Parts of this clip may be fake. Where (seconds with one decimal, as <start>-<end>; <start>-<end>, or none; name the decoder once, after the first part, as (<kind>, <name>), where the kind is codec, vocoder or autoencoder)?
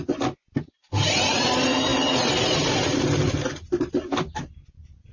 none